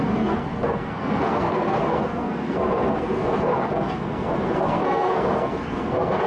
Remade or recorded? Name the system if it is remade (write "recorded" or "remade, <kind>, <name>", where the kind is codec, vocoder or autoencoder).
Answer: remade, codec, SNAC